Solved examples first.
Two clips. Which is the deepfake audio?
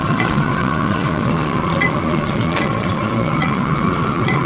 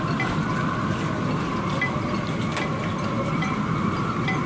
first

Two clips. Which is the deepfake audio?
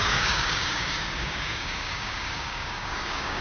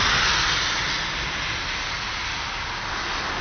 first